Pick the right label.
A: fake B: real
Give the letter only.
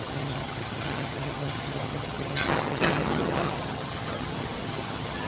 A